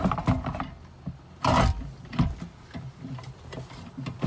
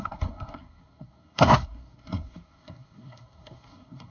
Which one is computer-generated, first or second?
second